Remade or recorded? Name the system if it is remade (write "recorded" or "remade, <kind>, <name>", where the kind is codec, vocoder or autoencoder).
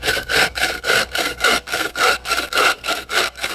remade, codec, SNAC